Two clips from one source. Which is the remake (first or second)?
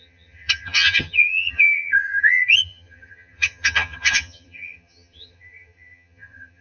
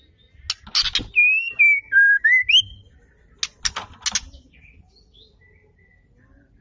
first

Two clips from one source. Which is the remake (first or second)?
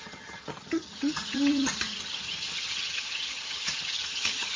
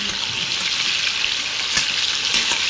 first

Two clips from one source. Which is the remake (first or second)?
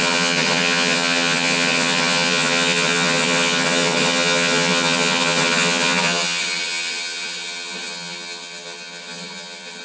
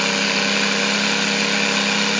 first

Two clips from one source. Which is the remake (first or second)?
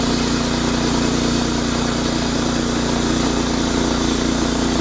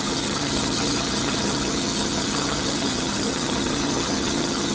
second